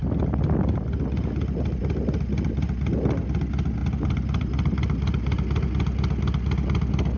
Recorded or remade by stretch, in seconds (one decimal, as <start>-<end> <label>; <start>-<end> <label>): 0.0-7.2 recorded